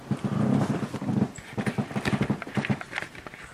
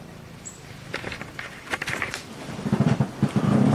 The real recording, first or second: first